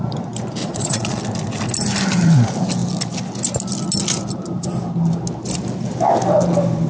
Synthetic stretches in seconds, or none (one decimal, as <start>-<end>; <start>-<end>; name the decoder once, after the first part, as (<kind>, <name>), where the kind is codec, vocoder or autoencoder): 0.6-1.2 (vocoder, Vocos)